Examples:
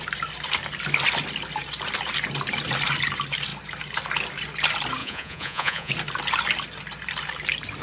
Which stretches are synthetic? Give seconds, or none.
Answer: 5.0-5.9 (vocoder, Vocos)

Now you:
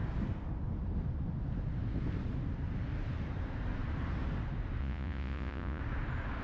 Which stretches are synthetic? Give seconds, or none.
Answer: 4.8-5.8 (vocoder, Vocos)

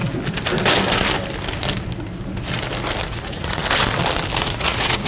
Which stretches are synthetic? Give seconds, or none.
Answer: 3.1-3.6 (vocoder, Vocos); 4.4-5.1

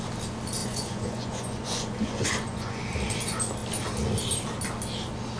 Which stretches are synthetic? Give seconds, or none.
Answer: 0.6-2.8 (vocoder, Vocos)

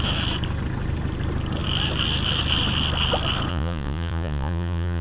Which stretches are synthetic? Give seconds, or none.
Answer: 3.5-5.0 (vocoder, Vocos)

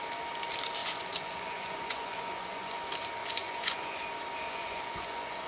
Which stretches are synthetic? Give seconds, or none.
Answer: 0.8-2.8 (vocoder, Vocos); 3.2-4.0; 4.5-5.5

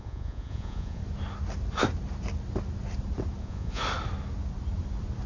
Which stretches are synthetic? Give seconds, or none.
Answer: 0.0-1.0 (vocoder, Vocos); 3.4-3.8

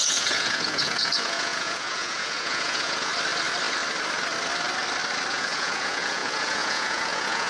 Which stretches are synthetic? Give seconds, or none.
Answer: 0.0-3.1 (vocoder, Vocos); 5.3-7.5